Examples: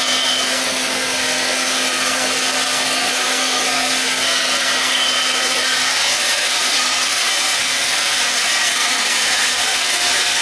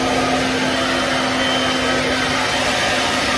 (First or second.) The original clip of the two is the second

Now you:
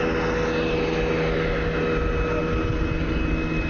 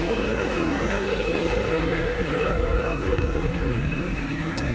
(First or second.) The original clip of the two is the first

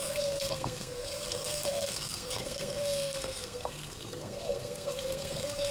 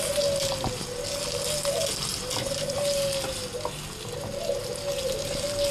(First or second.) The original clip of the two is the second